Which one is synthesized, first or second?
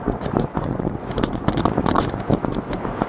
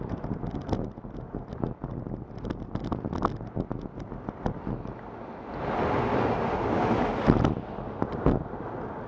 first